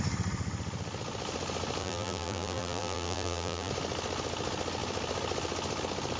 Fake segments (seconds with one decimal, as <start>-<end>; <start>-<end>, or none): 1.8-3.7